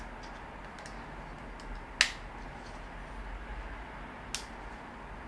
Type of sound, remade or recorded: recorded